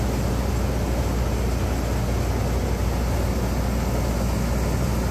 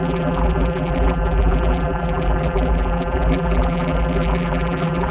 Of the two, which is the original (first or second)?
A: first